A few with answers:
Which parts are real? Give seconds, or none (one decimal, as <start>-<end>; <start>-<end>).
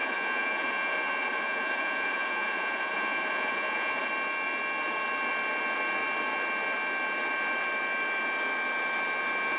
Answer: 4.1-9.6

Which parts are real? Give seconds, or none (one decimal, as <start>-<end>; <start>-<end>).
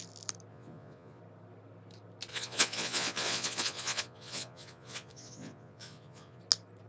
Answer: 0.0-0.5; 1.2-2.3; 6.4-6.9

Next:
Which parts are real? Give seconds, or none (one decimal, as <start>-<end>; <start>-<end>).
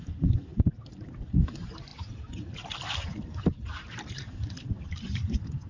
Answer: 0.0-5.7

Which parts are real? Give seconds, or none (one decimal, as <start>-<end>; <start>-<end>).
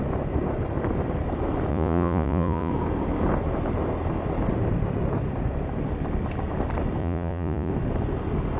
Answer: 0.0-1.7; 2.7-7.0; 7.7-8.6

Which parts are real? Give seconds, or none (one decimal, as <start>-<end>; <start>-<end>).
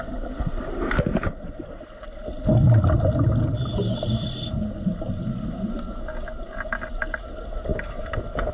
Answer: 0.0-8.5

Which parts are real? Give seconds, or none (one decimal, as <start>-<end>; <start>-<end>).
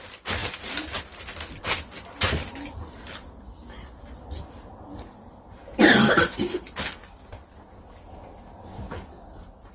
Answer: 0.0-9.7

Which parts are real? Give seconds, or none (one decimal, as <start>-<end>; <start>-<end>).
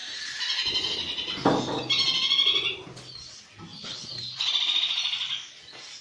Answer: 0.9-3.7; 4.4-6.0